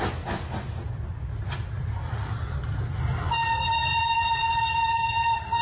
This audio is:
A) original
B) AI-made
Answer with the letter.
A